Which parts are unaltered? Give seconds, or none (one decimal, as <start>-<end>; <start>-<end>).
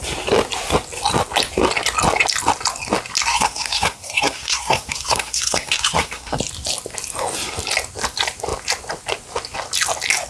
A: 0.0-3.3; 6.4-10.3